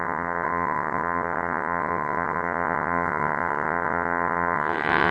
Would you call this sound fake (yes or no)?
yes